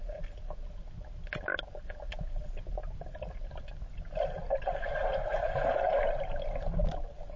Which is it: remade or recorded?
recorded